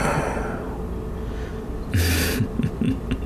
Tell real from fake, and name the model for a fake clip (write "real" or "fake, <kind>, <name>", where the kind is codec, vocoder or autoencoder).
real